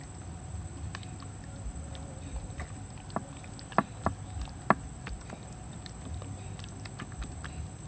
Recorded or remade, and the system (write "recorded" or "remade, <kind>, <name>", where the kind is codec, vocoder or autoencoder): recorded